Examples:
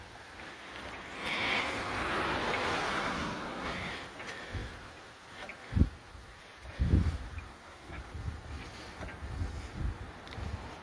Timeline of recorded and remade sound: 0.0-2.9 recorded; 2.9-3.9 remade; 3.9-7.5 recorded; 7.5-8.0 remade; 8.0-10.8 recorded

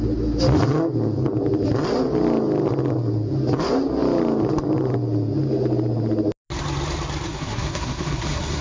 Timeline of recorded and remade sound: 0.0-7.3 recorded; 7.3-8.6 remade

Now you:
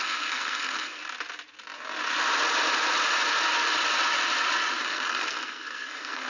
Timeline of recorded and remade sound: 0.0-1.0 remade; 1.0-4.8 recorded; 4.8-6.3 remade

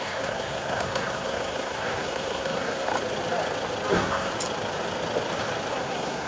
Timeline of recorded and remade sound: 0.0-2.9 remade; 2.9-3.9 recorded; 3.9-4.3 remade; 4.3-5.7 recorded; 5.7-6.3 remade

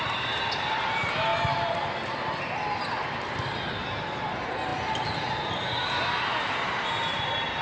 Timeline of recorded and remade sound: 0.0-7.6 recorded

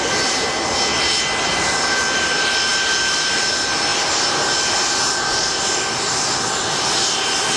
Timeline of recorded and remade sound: 0.0-7.6 recorded

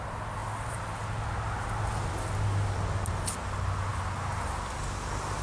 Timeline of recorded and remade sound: 0.0-5.4 recorded